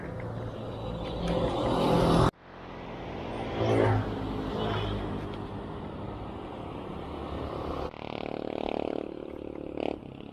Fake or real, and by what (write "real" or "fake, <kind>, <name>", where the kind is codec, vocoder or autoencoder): real